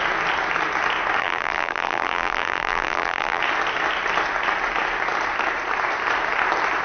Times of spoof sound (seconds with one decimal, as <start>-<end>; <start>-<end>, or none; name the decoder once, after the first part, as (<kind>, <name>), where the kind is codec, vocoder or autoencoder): 1.2-3.4 (vocoder, BigVGAN v2)